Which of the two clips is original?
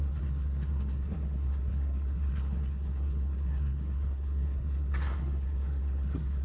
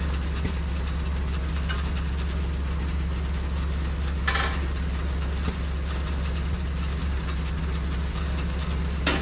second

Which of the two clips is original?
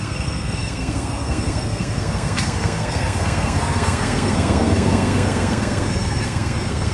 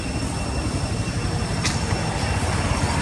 second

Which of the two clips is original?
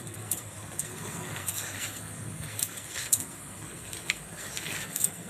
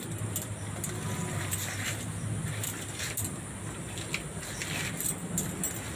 second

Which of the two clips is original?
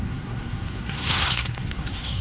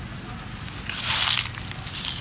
second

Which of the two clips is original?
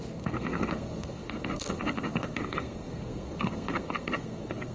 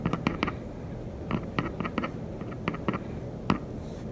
second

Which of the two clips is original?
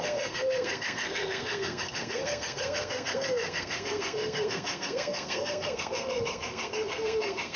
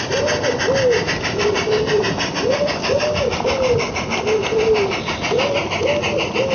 second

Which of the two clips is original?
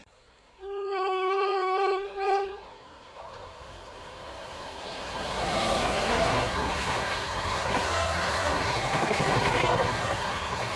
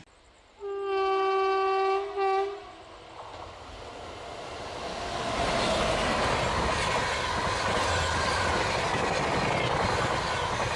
second